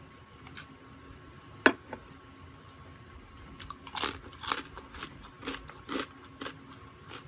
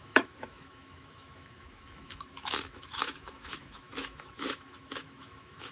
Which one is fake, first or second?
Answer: second